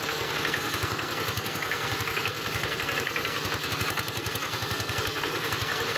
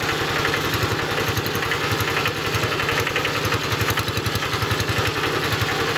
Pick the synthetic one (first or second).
first